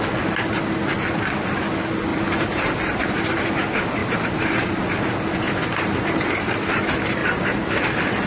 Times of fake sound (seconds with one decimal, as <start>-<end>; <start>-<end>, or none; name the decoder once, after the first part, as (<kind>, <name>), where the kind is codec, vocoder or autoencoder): 2.1-3.5 (vocoder, BigVGAN v2); 4.0-6.5; 7.2-7.8